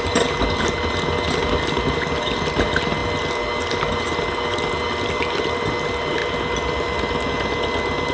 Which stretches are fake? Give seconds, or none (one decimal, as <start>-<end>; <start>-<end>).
none